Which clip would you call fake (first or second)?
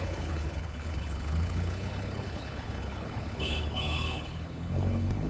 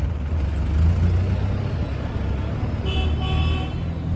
first